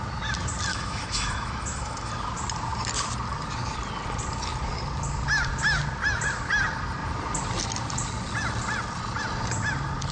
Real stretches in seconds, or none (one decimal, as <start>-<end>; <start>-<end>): 0.0-0.7; 2.1-10.1